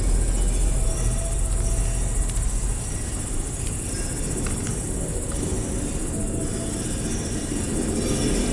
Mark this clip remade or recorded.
recorded